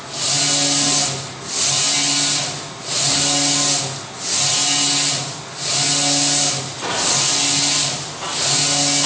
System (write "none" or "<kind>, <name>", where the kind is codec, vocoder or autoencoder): none